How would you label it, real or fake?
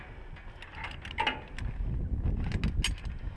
real